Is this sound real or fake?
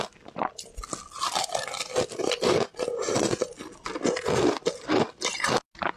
real